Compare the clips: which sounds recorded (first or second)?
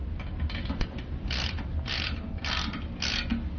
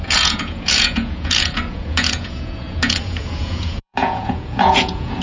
first